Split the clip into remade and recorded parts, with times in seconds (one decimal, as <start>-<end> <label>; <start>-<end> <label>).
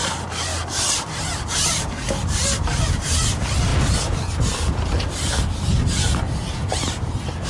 0.0-2.2 recorded; 2.2-3.7 remade; 3.7-6.7 recorded; 6.7-7.5 remade